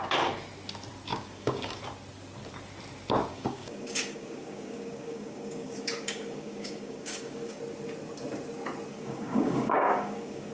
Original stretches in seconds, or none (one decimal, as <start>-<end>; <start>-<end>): 0.0-1.1; 1.8-3.3; 7.6-8.9